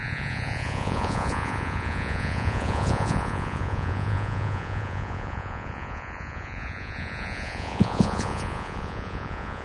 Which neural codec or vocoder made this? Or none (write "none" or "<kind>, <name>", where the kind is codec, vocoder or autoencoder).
vocoder, Vocos